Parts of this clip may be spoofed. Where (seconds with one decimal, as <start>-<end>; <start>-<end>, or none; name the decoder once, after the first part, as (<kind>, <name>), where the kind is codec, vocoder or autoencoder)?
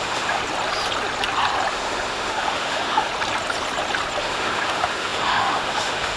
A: 0.0-0.4 (autoencoder, DAC-VAE); 1.7-3.1; 4.2-6.2